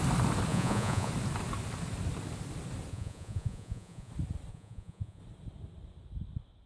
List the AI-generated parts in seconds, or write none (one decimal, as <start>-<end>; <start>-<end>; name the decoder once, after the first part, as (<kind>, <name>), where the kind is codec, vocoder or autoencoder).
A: 0.5-1.1 (vocoder, Vocos); 2.9-4.1; 4.5-5.2